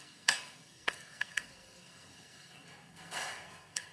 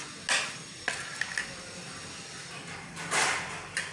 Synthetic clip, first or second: first